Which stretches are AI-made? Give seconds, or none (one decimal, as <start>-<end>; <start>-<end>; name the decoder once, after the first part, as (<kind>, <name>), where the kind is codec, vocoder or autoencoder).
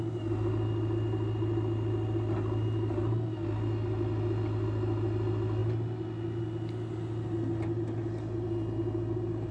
none